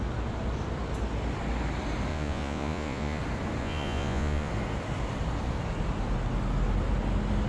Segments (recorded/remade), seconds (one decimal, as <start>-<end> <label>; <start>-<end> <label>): 0.0-2.1 recorded; 2.1-3.2 remade; 3.2-3.6 recorded; 3.6-4.5 remade; 4.5-7.5 recorded